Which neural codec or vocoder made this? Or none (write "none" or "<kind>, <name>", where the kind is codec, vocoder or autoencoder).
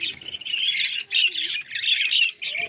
none